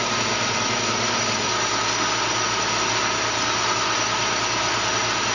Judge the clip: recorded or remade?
recorded